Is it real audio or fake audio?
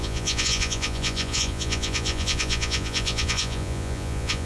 fake